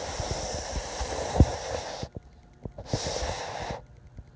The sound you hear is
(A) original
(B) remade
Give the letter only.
A